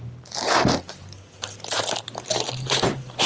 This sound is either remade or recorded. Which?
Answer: recorded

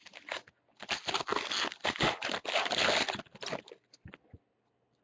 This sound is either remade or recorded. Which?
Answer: recorded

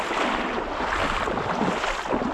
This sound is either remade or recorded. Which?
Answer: recorded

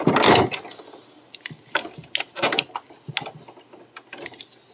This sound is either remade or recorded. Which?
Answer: recorded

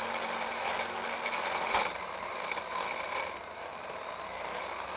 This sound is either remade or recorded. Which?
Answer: recorded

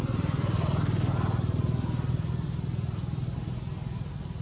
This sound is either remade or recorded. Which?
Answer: recorded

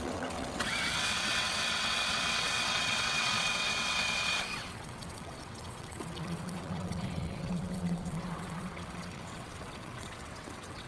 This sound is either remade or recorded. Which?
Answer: remade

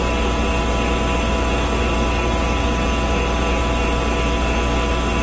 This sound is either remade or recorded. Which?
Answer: recorded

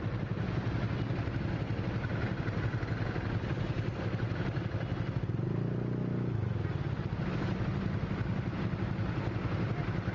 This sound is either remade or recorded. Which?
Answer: recorded